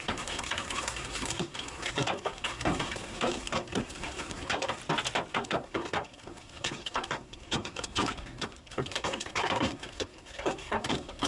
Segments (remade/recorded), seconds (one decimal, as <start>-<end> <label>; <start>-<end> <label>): 0.0-4.8 remade; 4.8-5.3 recorded; 5.3-11.3 remade